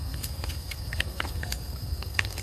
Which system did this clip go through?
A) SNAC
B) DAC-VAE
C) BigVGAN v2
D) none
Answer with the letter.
A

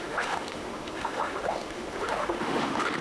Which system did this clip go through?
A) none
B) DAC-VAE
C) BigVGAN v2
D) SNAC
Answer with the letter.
B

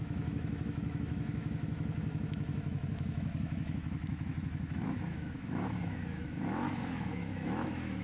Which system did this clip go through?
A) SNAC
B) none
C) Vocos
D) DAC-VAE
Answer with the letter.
D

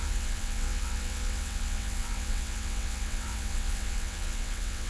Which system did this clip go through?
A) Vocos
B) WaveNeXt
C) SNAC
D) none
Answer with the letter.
B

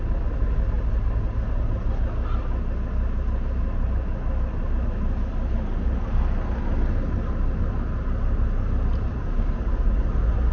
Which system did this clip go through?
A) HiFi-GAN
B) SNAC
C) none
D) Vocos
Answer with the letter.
C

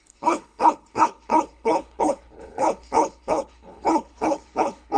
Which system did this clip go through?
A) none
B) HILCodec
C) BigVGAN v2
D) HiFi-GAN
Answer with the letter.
B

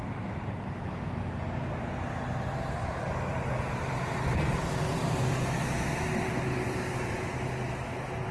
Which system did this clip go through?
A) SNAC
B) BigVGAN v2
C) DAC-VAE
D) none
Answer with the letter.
D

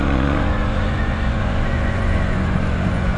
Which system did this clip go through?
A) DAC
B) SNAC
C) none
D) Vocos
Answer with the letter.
D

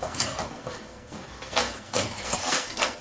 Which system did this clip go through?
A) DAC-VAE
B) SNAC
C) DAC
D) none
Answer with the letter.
B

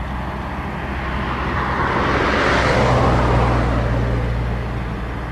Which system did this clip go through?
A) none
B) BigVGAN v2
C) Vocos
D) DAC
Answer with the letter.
A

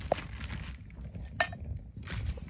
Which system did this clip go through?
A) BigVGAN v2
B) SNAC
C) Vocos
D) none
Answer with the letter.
D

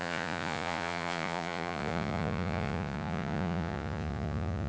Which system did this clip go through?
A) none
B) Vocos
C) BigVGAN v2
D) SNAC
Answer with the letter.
B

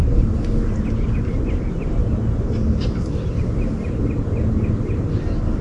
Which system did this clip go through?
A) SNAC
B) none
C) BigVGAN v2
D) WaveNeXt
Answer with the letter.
B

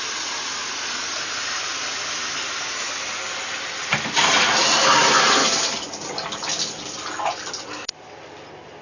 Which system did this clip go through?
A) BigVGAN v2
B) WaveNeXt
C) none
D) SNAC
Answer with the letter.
C